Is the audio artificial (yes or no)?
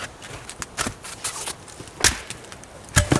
no